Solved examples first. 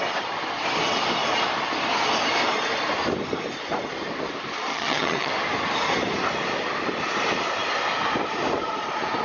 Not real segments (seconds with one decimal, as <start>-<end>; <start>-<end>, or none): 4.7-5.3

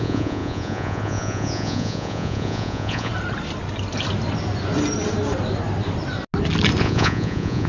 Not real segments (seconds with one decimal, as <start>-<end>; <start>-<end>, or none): 0.0-3.1; 6.8-7.7

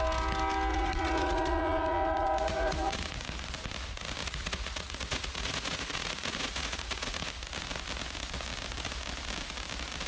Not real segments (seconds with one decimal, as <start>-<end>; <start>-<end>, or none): 0.7-3.1; 4.2-7.3

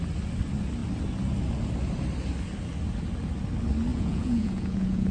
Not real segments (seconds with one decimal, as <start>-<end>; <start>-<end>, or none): 3.9-5.1

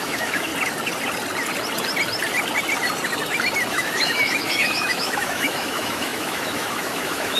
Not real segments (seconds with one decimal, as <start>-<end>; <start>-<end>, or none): 0.0-0.5; 3.7-7.4